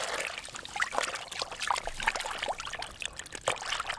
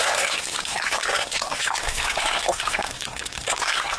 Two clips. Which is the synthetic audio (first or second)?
second